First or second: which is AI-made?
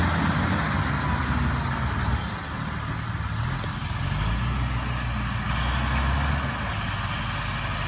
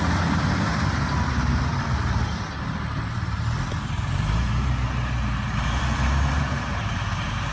second